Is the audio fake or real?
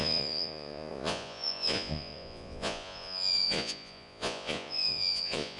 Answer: fake